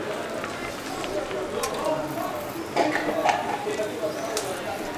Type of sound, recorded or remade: recorded